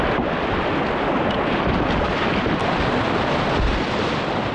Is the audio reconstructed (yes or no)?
no